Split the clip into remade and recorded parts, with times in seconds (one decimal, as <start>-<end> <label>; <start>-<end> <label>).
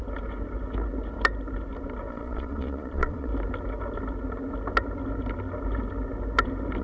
0.0-2.1 recorded; 2.1-3.3 remade; 3.3-6.8 recorded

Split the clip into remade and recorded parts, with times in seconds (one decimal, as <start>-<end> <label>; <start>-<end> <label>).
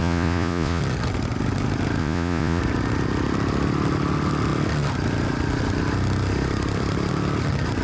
0.0-0.8 remade; 0.8-2.0 recorded; 2.0-2.6 remade; 2.6-7.8 recorded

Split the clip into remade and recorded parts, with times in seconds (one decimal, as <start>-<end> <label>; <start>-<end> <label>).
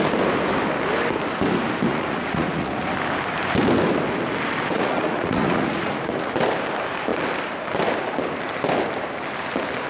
0.0-1.9 recorded; 1.9-2.9 remade; 2.9-4.7 recorded; 4.7-6.3 remade; 6.3-9.9 recorded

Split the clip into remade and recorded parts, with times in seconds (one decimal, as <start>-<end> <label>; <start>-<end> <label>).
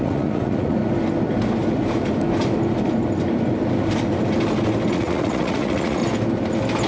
0.0-0.8 remade; 0.8-4.9 recorded; 4.9-6.0 remade; 6.0-6.9 recorded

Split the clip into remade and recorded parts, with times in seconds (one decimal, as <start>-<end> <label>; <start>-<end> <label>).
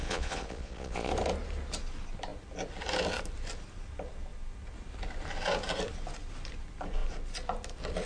0.0-1.1 remade; 1.1-8.1 recorded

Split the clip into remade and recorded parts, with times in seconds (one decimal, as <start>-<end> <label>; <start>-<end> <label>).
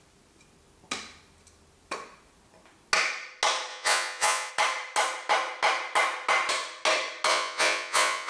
0.0-3.7 recorded; 3.7-4.5 remade; 4.5-7.3 recorded; 7.3-8.3 remade